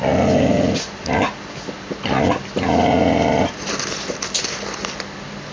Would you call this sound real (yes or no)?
yes